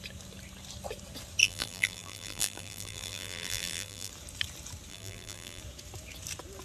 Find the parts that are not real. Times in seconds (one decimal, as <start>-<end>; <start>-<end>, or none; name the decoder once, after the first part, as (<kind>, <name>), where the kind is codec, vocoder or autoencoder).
1.4-4.1 (vocoder, BigVGAN v2); 4.9-5.6